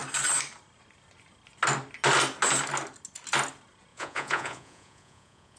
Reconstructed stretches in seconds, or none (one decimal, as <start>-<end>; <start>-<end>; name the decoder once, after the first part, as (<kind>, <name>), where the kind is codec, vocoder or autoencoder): 3.9-5.6 (vocoder, Vocos)